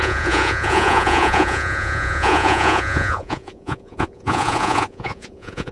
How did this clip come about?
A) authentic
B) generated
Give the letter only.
B